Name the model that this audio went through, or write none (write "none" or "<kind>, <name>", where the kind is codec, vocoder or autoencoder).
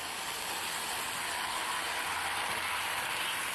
none